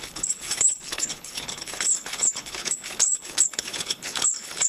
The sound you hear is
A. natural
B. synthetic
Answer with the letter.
B